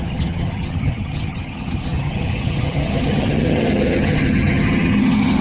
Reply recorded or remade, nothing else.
remade